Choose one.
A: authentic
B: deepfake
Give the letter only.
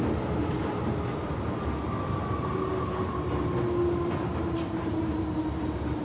A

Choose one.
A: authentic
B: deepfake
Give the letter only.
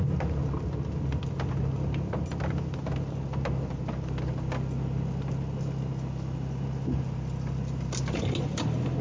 A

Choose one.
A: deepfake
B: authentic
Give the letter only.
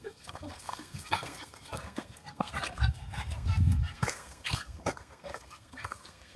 A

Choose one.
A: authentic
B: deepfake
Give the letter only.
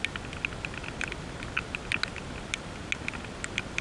A